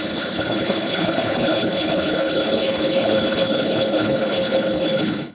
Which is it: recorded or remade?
remade